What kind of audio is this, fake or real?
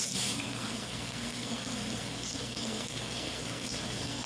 fake